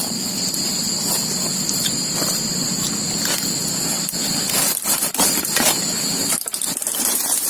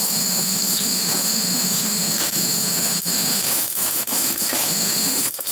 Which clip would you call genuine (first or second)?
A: first